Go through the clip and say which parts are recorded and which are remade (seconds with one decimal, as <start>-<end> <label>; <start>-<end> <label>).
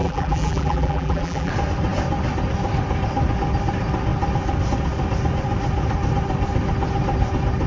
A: 0.0-1.5 remade; 1.5-7.7 recorded